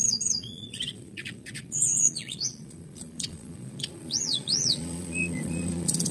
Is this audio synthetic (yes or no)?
yes